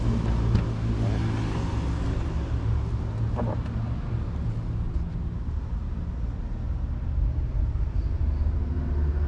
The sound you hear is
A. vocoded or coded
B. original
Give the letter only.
B